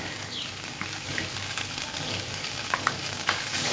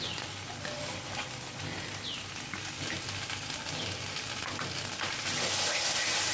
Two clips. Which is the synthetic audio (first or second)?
first